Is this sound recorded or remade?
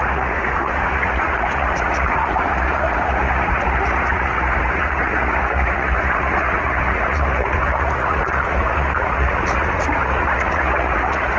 remade